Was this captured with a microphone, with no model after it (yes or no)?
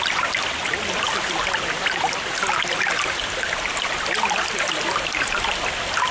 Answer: yes